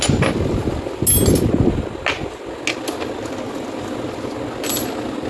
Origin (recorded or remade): recorded